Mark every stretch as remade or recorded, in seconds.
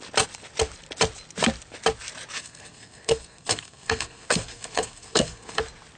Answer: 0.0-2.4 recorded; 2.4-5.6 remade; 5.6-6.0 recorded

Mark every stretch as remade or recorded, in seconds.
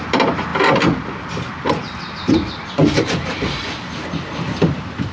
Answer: 0.0-5.1 recorded